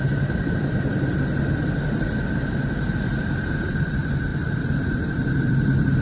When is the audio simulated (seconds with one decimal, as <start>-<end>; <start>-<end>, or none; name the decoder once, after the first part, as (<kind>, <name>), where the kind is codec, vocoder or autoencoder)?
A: 0.0-0.9 (vocoder, BigVGAN v2); 3.7-6.0